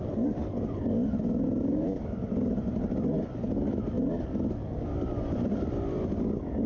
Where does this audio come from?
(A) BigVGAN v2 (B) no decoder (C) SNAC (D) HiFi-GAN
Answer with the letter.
B